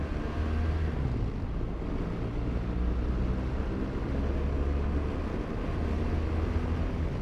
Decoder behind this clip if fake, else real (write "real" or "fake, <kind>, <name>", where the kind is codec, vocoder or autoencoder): real